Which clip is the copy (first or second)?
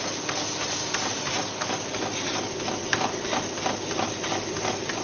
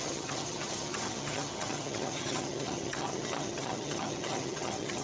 second